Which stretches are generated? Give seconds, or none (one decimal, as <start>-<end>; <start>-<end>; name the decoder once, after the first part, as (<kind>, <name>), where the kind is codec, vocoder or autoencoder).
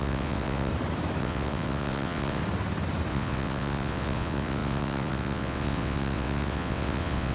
0.0-0.7 (vocoder, WaveNeXt); 1.2-2.4; 3.1-7.3